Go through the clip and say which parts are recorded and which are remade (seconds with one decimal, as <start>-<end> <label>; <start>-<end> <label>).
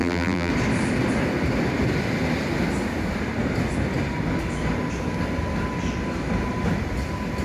0.0-0.5 remade; 0.5-7.4 recorded